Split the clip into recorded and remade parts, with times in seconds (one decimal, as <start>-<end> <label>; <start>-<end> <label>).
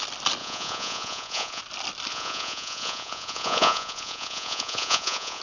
0.0-0.4 recorded; 0.4-1.6 remade; 1.6-2.1 recorded; 2.1-5.4 remade